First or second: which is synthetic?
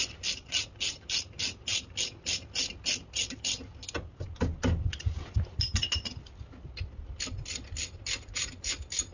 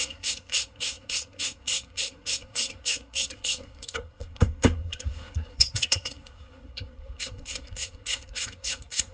second